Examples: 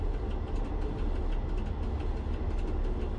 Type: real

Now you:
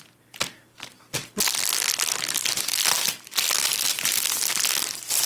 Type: real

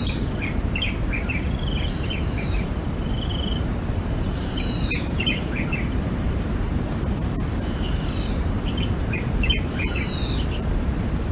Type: fake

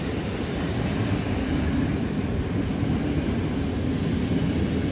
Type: real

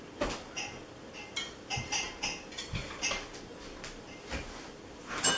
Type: real